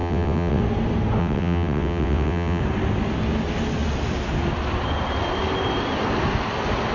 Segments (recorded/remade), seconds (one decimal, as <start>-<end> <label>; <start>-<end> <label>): 0.0-0.6 remade; 0.6-1.2 recorded; 1.2-2.6 remade; 2.6-6.9 recorded